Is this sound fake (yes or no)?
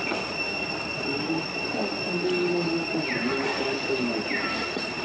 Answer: no